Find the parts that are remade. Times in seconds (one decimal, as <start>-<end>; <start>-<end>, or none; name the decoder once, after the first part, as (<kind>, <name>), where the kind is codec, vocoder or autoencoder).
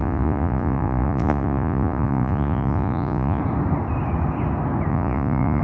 0.0-3.4 (vocoder, Vocos); 4.9-5.6